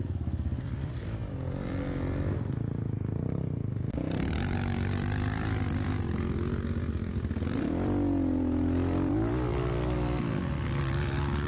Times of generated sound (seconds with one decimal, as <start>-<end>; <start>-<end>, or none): 0.0-1.2; 3.9-9.5